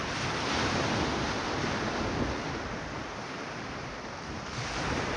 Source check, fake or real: real